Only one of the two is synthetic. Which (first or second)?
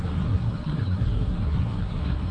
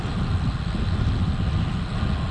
first